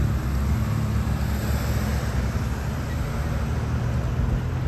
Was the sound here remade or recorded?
recorded